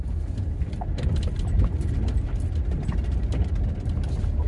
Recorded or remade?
recorded